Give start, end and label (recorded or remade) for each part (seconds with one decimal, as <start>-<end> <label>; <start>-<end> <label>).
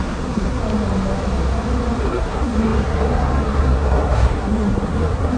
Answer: 0.0-0.6 remade; 0.6-2.0 recorded; 2.0-5.4 remade